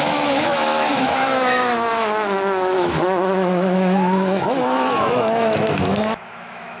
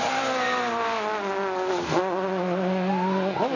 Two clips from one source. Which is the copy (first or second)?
first